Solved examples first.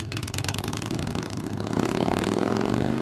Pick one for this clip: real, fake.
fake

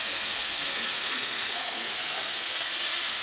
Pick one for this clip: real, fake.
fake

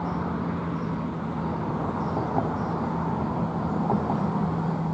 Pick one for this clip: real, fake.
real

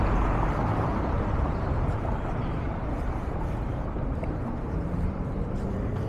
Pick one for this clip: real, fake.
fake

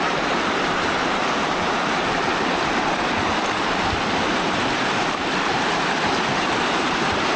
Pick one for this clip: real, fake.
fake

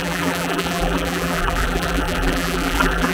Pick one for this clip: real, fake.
fake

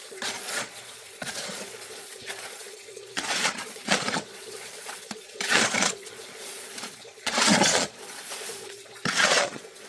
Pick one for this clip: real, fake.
fake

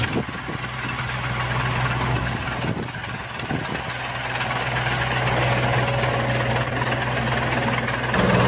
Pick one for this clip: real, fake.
real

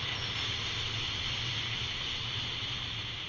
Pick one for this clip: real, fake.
real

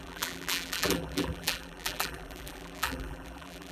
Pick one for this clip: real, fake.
fake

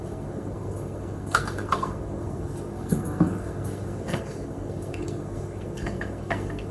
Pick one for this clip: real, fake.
fake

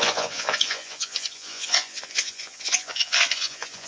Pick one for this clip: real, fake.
fake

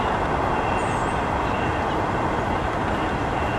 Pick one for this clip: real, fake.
real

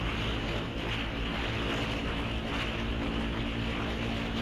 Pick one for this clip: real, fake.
real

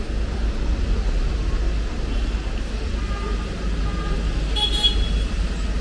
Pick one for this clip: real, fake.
real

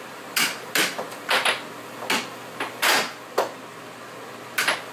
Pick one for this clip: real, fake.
real